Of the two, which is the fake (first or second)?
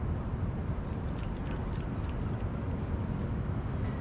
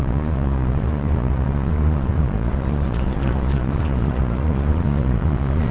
second